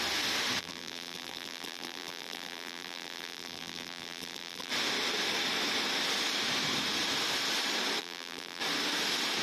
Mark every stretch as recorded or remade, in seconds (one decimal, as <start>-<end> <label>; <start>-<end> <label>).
0.0-0.6 recorded; 0.6-4.7 remade; 4.7-8.0 recorded; 8.0-8.6 remade; 8.6-9.4 recorded